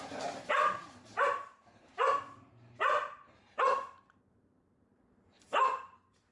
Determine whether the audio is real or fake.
fake